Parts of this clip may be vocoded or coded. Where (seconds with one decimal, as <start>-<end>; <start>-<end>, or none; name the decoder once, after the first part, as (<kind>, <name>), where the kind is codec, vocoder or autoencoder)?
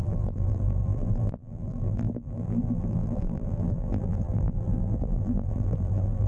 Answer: 0.0-6.3 (vocoder, BigVGAN v2)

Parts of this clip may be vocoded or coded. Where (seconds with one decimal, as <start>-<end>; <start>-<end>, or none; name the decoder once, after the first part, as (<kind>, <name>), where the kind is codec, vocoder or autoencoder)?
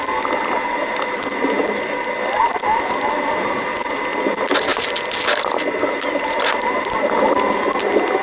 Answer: none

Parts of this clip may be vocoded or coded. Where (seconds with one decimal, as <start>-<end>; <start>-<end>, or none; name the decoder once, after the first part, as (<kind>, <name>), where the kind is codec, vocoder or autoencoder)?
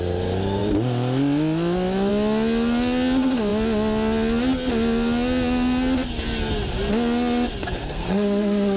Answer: 7.8-8.8 (codec, SNAC)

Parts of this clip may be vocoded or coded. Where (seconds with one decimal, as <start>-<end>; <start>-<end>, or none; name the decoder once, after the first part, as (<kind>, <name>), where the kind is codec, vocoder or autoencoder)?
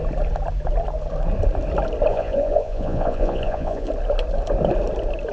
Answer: 2.1-3.9 (vocoder, Vocos)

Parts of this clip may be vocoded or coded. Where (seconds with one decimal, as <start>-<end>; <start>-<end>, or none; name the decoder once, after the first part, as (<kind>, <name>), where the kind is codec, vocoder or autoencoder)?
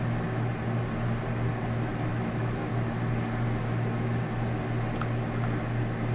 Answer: 2.1-2.7 (autoencoder, DAC-VAE)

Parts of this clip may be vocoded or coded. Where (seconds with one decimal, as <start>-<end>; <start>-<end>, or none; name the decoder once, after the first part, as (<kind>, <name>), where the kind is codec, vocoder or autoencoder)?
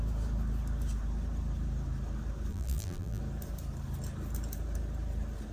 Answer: 2.5-3.2 (vocoder, BigVGAN v2)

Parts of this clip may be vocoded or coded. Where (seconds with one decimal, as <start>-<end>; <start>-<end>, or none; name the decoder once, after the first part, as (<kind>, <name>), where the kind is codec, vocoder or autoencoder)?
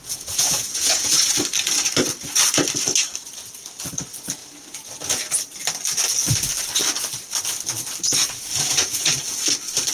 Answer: 0.0-1.2 (vocoder, Vocos); 8.5-9.1